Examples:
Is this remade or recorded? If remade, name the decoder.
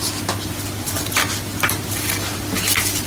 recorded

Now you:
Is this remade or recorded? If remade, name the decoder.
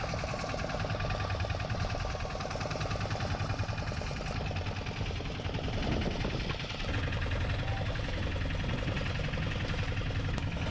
recorded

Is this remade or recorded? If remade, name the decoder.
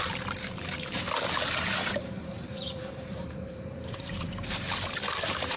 remade, vocoder, BigVGAN v2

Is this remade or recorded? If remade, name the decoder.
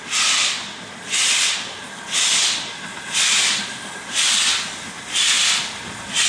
recorded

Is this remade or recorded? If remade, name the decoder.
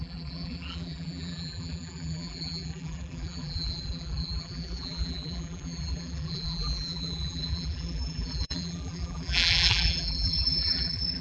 remade, vocoder, BigVGAN v2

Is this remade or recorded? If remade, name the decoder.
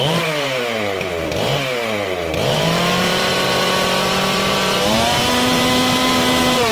remade, vocoder, BigVGAN v2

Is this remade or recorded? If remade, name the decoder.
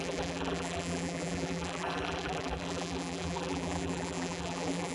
remade, vocoder, BigVGAN v2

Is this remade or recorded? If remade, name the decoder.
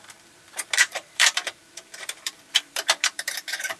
remade, vocoder, BigVGAN v2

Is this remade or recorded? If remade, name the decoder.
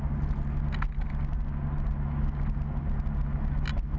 recorded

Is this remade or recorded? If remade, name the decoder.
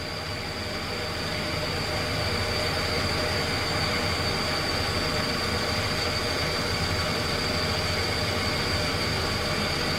recorded